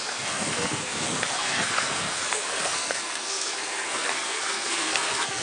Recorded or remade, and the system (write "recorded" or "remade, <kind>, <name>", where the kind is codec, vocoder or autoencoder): remade, codec, SNAC